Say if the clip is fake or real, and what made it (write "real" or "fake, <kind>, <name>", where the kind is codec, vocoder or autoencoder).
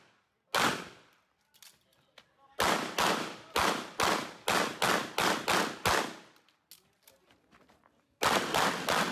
real